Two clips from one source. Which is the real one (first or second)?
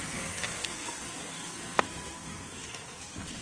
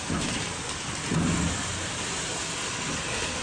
second